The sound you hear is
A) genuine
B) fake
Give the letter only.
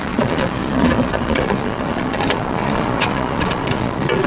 B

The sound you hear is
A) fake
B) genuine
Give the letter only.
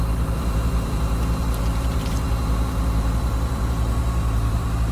A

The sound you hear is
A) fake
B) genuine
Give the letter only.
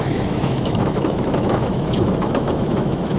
A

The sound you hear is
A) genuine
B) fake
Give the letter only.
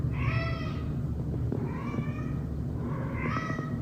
A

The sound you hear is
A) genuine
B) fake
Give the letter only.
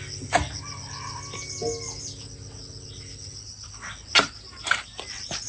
A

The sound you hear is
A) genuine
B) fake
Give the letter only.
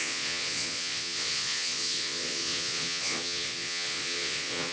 B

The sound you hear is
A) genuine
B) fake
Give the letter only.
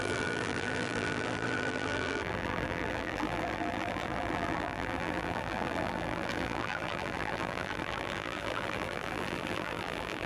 B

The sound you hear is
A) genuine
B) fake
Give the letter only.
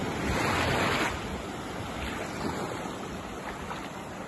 A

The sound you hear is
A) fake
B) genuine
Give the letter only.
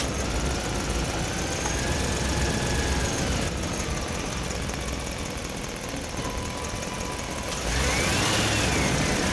B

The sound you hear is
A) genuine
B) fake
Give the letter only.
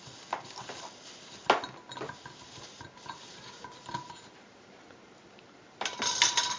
A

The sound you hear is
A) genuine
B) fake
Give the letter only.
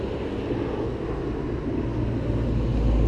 A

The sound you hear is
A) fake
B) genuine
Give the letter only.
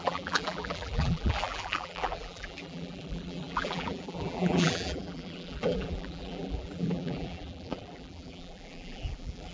A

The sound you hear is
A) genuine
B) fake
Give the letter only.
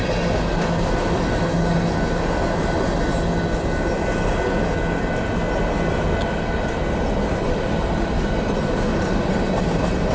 A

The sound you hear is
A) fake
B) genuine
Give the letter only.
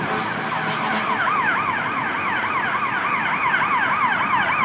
B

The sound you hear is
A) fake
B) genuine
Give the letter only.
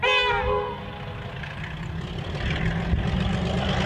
B